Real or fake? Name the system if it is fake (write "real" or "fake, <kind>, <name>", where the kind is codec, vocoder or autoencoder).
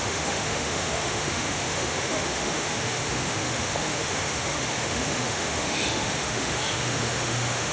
fake, autoencoder, DAC-VAE